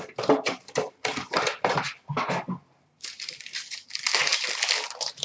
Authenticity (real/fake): real